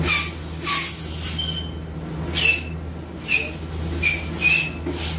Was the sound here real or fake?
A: real